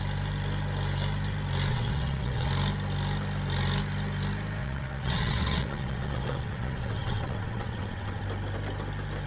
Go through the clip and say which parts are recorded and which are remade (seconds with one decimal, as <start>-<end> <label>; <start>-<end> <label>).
0.0-1.7 recorded; 1.7-2.5 remade; 2.5-4.6 recorded; 4.6-8.2 remade; 8.2-9.3 recorded

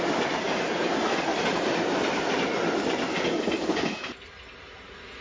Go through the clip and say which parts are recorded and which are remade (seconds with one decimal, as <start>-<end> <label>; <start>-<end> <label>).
0.0-5.2 recorded

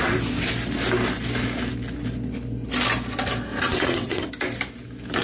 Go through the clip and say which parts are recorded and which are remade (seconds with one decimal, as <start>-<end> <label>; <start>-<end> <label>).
0.0-3.5 recorded; 3.5-4.3 remade; 4.3-5.2 recorded

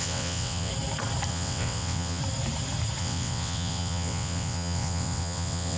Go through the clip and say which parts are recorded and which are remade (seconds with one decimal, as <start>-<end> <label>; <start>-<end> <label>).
0.0-0.7 remade; 0.7-1.3 recorded; 1.3-2.2 remade; 2.2-3.0 recorded; 3.0-5.8 remade

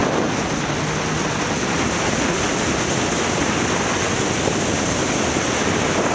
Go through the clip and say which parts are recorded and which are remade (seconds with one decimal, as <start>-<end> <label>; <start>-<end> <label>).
0.0-6.1 recorded

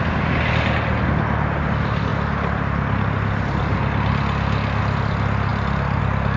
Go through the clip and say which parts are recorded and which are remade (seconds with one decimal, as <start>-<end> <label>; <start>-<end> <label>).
0.0-6.4 recorded

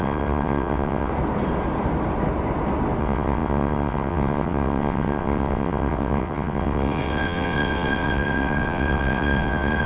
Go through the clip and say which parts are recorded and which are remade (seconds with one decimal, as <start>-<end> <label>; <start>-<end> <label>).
0.0-1.1 remade; 1.1-3.0 recorded; 3.0-9.9 remade